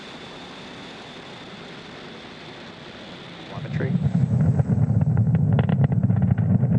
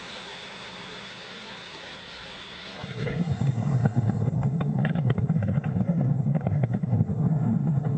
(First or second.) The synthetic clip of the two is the second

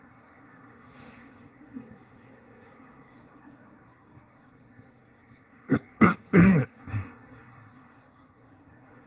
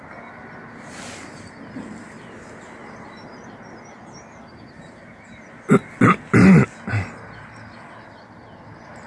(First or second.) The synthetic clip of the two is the first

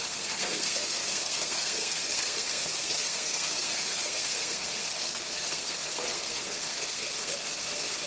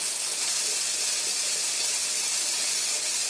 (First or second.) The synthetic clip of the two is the first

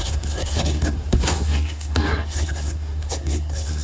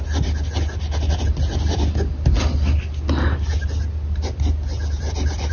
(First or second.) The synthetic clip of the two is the first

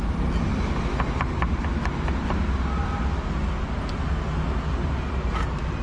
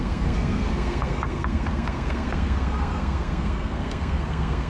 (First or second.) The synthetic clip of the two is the second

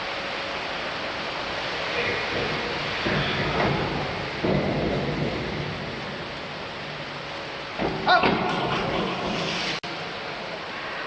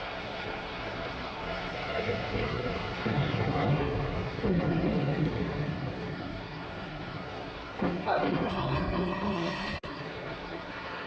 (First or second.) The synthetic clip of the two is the second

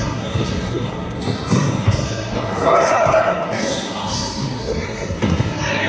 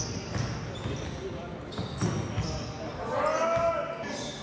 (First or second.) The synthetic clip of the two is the first